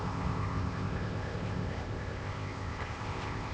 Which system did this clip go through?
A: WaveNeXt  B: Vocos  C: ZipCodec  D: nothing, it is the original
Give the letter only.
C